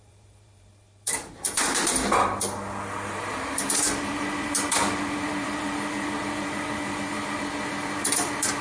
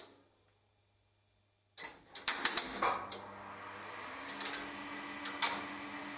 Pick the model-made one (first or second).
first